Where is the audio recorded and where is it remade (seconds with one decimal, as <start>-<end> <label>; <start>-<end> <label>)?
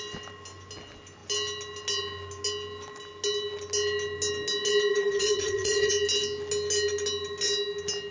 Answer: 0.0-4.9 recorded; 4.9-5.9 remade; 5.9-8.1 recorded